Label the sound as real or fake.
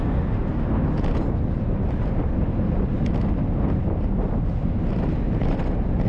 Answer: real